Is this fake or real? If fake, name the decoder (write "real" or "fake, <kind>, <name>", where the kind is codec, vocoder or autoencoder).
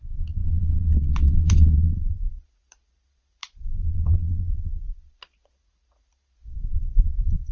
fake, vocoder, Vocos